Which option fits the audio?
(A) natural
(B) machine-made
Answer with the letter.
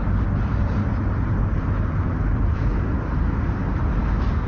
A